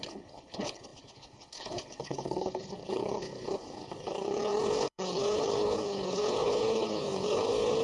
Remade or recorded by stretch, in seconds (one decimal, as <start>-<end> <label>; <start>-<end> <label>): 0.0-7.8 remade